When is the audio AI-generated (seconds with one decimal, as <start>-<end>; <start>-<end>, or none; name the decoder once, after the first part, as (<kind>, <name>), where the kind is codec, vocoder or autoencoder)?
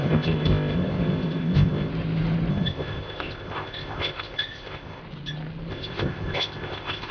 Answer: 0.0-1.9 (codec, ZipCodec); 2.5-5.0; 5.7-7.1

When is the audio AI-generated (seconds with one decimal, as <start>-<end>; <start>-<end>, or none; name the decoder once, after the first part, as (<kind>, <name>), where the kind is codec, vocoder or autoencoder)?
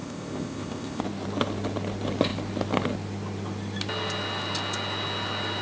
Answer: 0.0-1.0 (codec, ZipCodec)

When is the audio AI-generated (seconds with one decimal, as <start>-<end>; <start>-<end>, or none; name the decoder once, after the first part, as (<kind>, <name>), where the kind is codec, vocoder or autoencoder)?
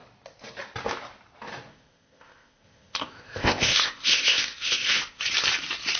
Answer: 1.7-5.2 (codec, ZipCodec)